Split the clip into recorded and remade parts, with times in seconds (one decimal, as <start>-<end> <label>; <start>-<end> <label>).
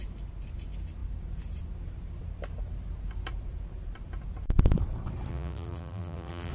0.0-5.3 recorded; 5.3-6.5 remade